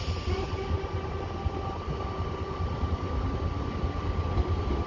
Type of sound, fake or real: real